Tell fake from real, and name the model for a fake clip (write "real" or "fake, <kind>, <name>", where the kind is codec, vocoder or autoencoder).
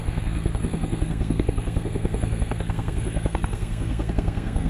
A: fake, codec, SNAC